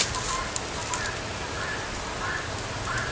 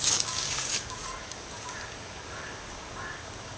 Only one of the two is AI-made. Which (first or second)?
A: second